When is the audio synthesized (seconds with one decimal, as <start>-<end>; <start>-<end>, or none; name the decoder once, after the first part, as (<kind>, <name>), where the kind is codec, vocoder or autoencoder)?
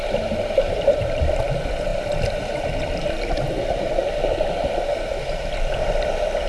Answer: 0.0-1.2 (vocoder, BigVGAN v2)